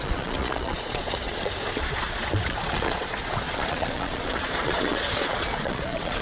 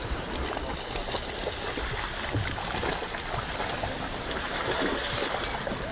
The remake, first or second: first